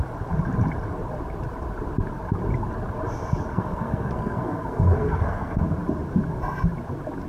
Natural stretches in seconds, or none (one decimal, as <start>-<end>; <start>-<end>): 0.0-3.5; 5.6-7.3